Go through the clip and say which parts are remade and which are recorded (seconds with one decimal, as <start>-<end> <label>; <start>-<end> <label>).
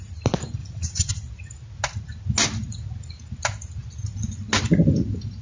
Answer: 0.0-0.6 recorded; 0.6-1.1 remade; 1.1-5.4 recorded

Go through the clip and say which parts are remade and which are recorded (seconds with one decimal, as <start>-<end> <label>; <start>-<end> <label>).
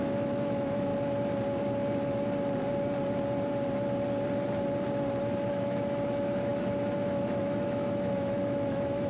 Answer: 0.0-0.9 remade; 0.9-5.5 recorded; 5.5-9.1 remade